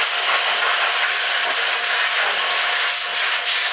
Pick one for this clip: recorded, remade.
recorded